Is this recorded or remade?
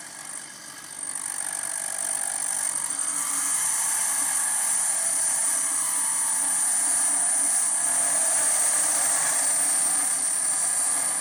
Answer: recorded